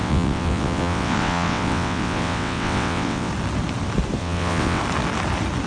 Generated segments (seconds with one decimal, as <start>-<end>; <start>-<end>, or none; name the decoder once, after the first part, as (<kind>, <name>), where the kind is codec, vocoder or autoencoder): 0.0-3.3 (vocoder, WaveNeXt); 4.2-4.8